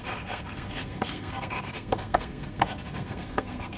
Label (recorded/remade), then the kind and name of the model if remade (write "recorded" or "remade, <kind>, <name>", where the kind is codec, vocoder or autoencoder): remade, codec, SNAC